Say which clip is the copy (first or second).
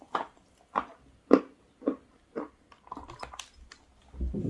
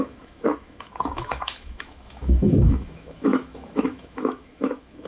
second